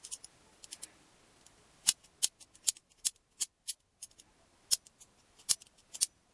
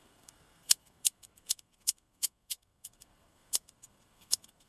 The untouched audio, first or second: first